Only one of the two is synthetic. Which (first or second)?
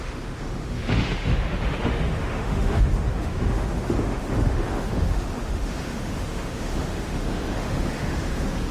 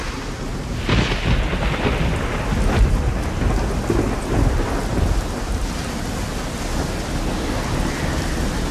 first